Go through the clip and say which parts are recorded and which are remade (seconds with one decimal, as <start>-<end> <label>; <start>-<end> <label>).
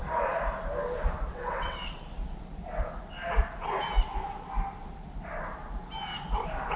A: 0.0-1.3 recorded; 1.3-2.0 remade; 2.0-6.8 recorded